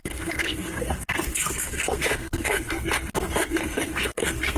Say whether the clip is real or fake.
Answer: fake